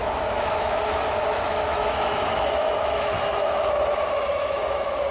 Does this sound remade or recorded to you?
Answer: remade